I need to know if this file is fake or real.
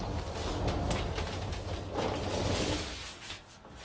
real